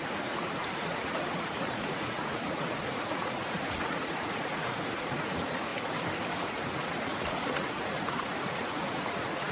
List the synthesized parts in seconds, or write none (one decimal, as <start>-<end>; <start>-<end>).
0.0-5.7; 6.3-9.5

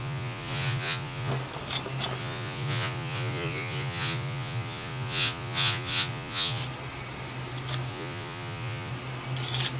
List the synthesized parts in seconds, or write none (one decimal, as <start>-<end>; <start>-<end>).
0.0-1.3; 2.2-6.6; 7.9-8.9

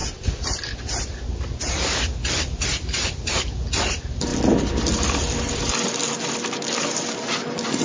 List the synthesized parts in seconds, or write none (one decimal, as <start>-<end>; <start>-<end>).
none

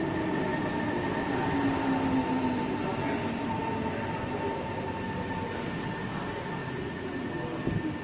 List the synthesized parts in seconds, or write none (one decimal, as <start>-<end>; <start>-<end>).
6.6-7.3

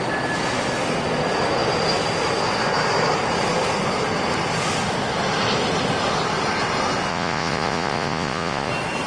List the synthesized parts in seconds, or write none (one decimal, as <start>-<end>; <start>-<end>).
7.1-8.7

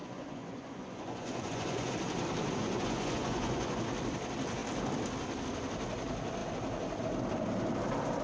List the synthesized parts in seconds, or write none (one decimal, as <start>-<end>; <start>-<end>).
0.0-1.9; 2.6-3.8